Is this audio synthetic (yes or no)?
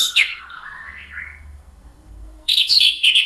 yes